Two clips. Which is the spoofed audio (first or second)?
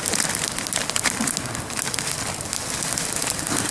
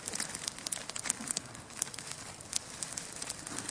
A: second